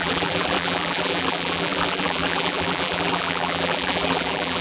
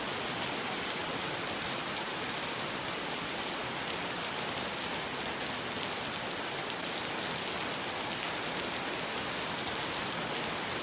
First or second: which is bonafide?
second